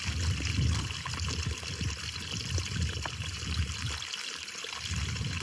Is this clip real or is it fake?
real